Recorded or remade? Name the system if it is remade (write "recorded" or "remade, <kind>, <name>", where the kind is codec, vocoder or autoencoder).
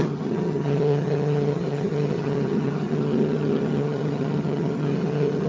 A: remade, vocoder, HiFi-GAN